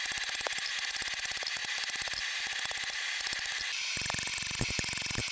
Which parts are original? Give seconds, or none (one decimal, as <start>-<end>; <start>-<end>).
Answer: 0.0-5.3